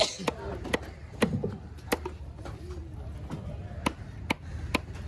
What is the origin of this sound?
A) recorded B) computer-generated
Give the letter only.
A